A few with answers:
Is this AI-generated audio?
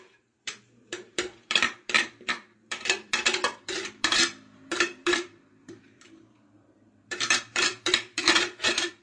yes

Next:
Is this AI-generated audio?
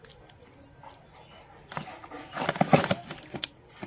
no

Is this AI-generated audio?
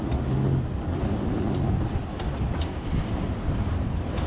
yes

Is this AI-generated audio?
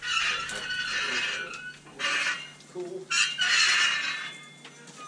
no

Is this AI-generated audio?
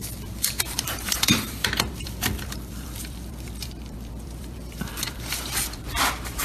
yes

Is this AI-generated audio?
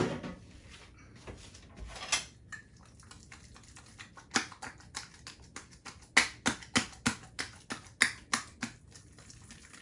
no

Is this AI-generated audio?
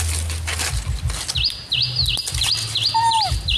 no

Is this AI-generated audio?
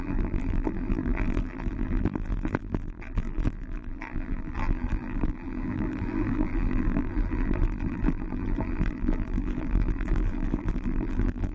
yes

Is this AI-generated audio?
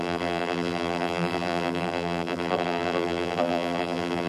yes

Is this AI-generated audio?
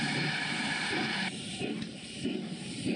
yes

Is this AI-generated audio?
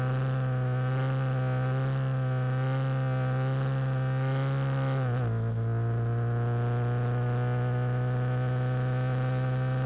no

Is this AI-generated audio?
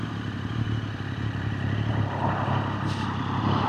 yes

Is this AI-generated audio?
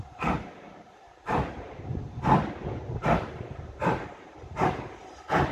yes